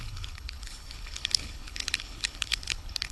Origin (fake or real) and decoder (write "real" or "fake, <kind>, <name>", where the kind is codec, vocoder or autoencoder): fake, codec, HILCodec